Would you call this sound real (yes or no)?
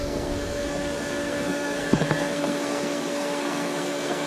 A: no